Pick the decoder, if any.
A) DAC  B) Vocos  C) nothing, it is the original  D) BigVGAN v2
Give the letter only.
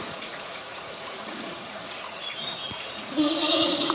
B